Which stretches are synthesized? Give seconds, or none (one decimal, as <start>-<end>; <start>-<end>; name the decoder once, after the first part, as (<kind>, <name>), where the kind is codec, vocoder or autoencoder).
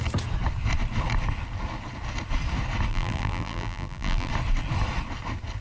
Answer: 2.9-4.3 (vocoder, BigVGAN v2)